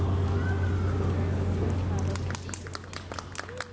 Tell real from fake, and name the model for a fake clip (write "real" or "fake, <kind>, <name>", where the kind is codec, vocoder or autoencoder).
real